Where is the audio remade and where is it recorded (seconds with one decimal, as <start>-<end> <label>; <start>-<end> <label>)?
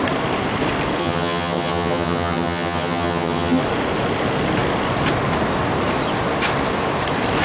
0.0-1.0 recorded; 1.0-3.6 remade; 3.6-7.4 recorded